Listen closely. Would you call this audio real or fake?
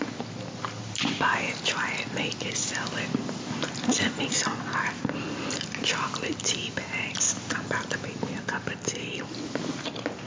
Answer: real